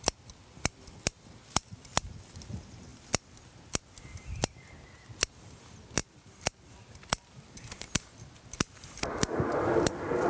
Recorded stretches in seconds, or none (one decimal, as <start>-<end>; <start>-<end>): 0.0-10.3